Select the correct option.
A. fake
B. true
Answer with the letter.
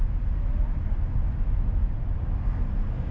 B